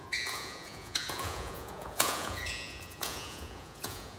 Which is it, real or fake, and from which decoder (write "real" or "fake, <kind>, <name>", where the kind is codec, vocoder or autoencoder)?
fake, vocoder, Vocos